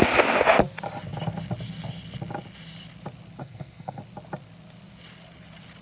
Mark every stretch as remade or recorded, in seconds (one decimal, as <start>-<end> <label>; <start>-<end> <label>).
0.0-3.4 recorded; 3.4-4.0 remade; 4.0-5.8 recorded